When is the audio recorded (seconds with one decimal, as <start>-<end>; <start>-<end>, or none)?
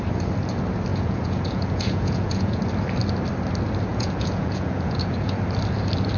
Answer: 0.0-0.9; 2.6-3.9; 5.4-6.2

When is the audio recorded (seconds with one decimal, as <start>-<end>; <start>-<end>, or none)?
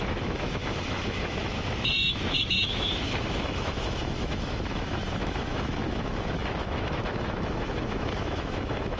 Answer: none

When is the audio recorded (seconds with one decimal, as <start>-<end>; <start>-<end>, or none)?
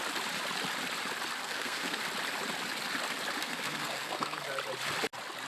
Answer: 0.0-1.4; 2.0-3.4; 4.4-5.5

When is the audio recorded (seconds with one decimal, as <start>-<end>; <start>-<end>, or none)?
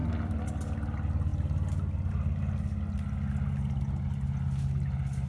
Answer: 0.0-5.3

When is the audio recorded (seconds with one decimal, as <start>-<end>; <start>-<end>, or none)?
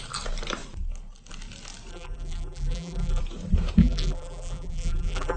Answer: 0.0-1.9; 3.2-3.8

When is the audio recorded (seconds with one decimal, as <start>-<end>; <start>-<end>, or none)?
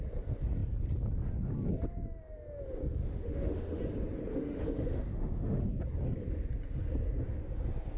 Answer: 0.0-3.0; 3.8-4.3; 5.7-8.0